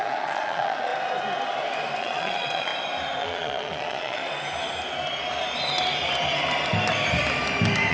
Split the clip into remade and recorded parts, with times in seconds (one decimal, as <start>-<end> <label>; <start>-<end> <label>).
0.0-0.9 remade; 0.9-2.0 recorded; 2.0-2.7 remade; 2.7-3.2 recorded; 3.2-4.2 remade; 4.2-7.9 recorded